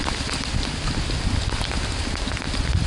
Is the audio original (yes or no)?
yes